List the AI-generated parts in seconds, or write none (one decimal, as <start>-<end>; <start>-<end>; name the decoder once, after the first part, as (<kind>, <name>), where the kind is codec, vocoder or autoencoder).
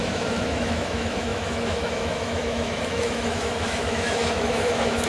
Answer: 0.0-5.1 (autoencoder, DAC-VAE)